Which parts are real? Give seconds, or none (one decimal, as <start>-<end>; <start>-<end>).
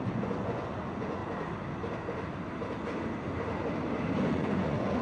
1.2-4.2